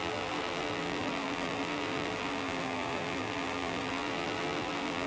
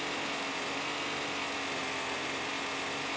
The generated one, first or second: first